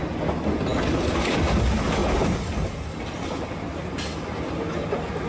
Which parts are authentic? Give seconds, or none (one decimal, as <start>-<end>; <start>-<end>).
0.0-5.3